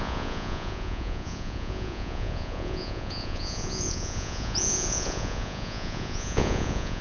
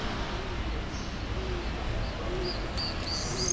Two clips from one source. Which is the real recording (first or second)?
second